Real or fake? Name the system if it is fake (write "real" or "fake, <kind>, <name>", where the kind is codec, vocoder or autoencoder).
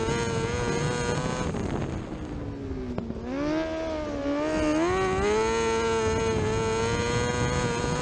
real